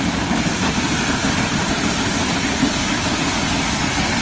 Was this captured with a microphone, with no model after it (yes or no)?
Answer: yes